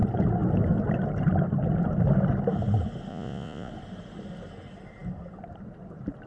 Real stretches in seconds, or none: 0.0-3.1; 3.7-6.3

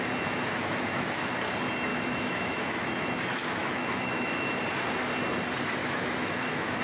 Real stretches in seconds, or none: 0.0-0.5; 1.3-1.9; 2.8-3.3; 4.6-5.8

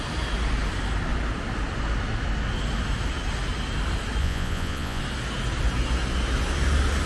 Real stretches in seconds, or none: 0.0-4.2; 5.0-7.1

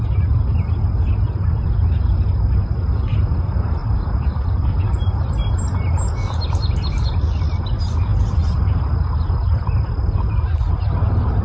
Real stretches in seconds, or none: 0.0-3.8; 5.6-8.1; 8.7-11.4

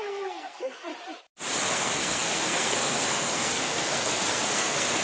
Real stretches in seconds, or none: 0.9-1.6

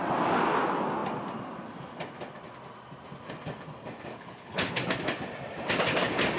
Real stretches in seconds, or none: 0.0-4.1; 4.8-6.4

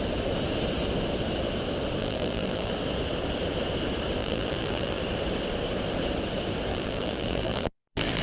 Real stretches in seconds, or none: 0.0-2.0; 2.7-4.2; 5.0-6.7